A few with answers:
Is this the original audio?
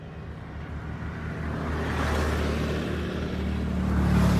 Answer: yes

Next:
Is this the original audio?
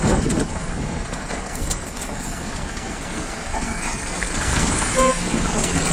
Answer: no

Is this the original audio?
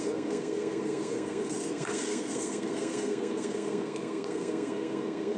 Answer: no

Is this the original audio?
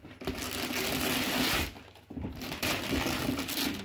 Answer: yes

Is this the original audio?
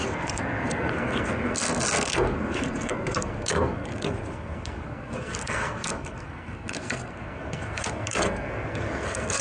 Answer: no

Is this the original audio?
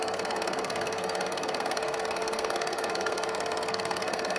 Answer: no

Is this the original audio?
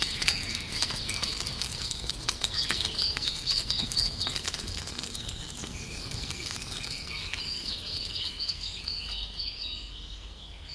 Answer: no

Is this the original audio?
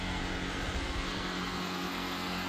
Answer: no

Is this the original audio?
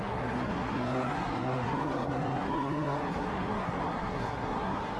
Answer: no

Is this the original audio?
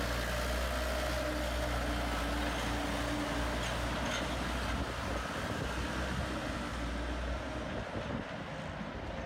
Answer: yes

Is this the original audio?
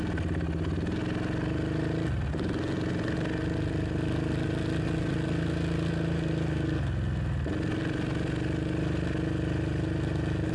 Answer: yes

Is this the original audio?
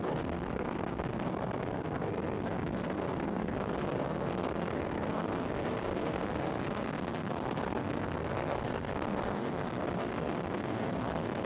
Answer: no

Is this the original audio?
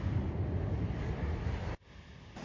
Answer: yes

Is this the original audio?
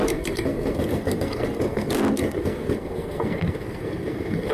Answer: no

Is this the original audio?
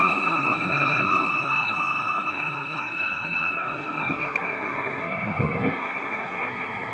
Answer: no